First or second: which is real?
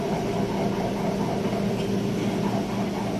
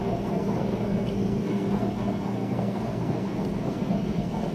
first